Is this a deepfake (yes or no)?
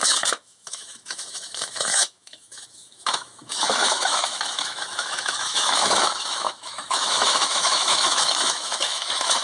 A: yes